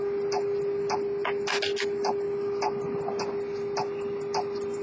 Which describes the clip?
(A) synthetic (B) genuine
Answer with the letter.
B